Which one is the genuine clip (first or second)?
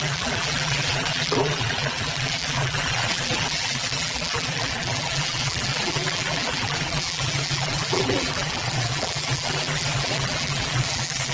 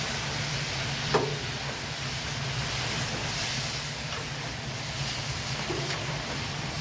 second